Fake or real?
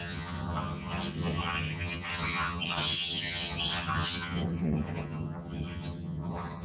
fake